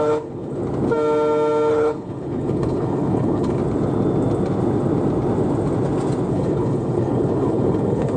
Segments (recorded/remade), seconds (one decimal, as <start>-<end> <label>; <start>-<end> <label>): 0.0-0.6 remade; 0.6-1.7 recorded; 1.7-3.6 remade; 3.6-6.3 recorded; 6.3-8.2 remade